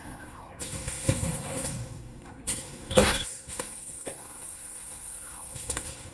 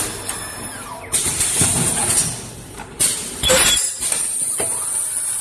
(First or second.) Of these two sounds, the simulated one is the first